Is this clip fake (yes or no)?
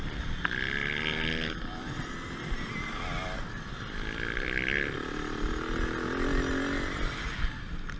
no